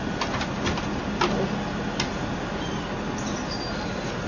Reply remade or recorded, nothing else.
recorded